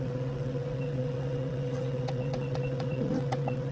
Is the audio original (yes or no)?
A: no